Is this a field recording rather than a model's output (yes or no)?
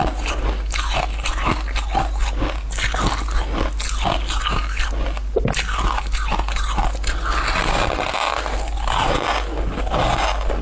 yes